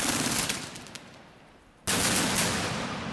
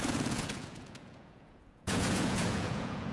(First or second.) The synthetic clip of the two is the second